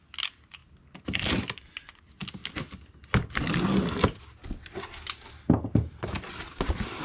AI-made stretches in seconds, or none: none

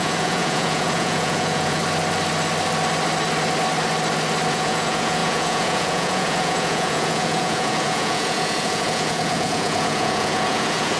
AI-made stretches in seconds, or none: 0.0-1.8 (vocoder, Vocos); 4.5-11.0

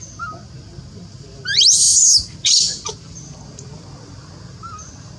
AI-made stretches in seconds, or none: none

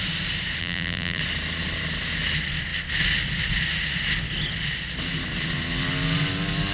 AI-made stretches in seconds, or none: 0.6-1.2 (vocoder, BigVGAN v2)